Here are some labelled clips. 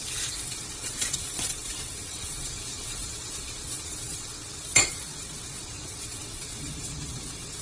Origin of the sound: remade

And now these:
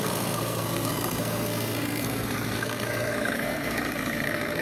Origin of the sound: remade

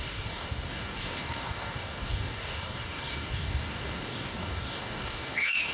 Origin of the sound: remade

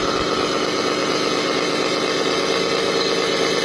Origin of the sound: recorded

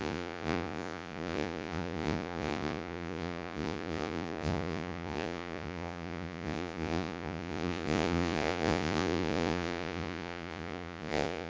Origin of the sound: remade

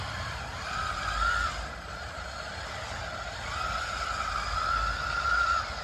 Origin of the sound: recorded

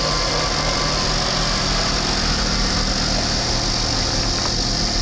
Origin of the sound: recorded